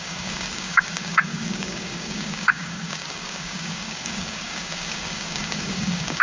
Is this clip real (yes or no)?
no